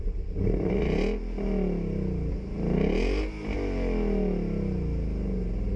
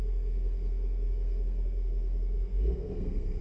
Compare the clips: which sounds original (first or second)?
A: first